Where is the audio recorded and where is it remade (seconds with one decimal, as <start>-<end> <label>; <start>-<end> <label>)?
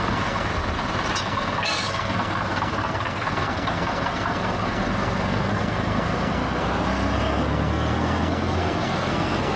0.0-0.5 remade; 0.5-1.2 recorded; 1.2-9.6 remade